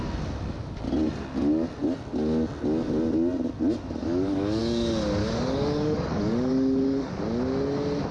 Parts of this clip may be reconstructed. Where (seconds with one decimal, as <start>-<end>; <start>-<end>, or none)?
4.0-4.6; 5.2-7.1

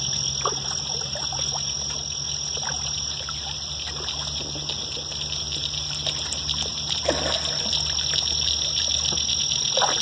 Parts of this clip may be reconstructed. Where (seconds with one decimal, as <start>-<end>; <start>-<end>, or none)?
none

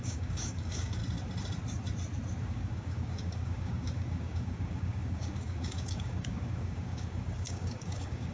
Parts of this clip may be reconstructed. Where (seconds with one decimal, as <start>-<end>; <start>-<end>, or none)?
0.0-1.0; 2.4-8.3

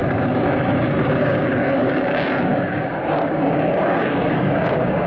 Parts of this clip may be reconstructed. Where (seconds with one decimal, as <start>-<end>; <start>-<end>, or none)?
0.0-5.1

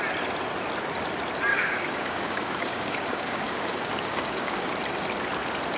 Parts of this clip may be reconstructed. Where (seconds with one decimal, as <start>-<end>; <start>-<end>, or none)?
1.5-4.7

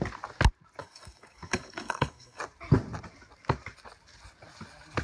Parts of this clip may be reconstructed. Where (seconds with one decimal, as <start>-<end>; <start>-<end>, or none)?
0.8-2.4

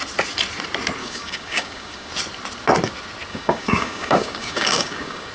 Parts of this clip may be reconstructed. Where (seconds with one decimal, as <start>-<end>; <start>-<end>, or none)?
1.0-2.1; 3.3-5.3

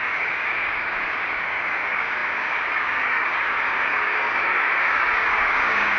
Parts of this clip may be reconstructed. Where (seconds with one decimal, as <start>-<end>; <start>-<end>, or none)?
0.0-6.0